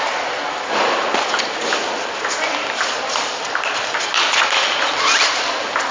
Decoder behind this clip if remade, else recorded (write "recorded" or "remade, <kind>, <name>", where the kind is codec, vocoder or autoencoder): recorded